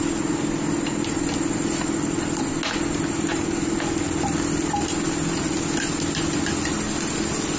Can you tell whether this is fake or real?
real